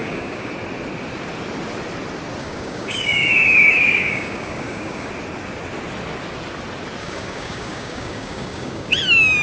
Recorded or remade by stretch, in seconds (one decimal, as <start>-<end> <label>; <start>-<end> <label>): 0.0-0.5 remade; 0.5-2.4 recorded; 2.4-5.1 remade; 5.1-7.0 recorded; 7.0-8.9 remade; 8.9-9.4 recorded